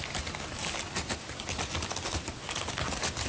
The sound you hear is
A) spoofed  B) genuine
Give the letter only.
B